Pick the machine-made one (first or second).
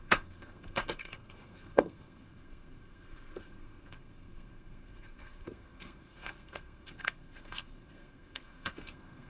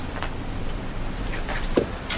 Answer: first